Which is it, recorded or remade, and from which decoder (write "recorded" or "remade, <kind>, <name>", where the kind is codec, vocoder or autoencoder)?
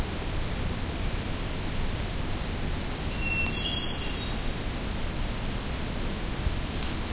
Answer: recorded